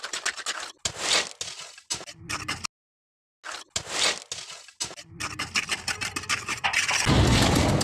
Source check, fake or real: real